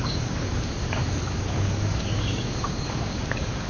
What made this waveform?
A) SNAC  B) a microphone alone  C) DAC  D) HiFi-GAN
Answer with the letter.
C